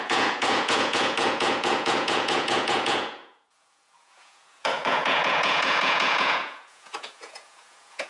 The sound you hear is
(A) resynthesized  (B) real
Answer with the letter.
A